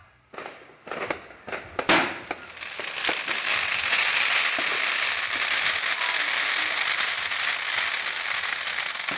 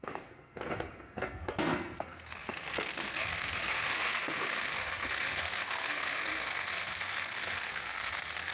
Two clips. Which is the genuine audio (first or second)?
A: first